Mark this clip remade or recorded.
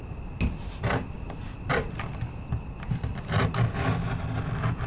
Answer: recorded